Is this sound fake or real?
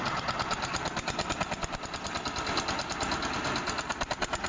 real